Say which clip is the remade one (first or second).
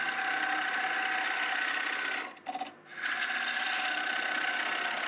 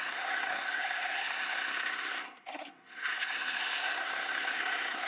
second